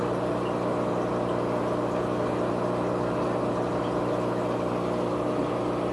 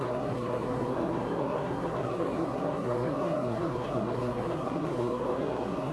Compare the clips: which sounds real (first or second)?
first